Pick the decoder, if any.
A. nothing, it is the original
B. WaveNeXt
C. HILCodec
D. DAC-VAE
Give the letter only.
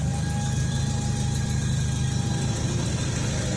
A